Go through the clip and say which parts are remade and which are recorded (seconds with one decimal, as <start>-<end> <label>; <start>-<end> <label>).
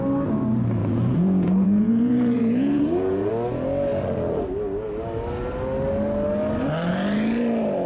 0.0-0.8 recorded; 0.8-3.3 remade; 3.3-7.9 recorded